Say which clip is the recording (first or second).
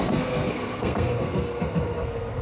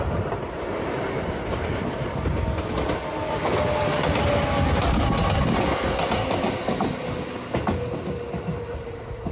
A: second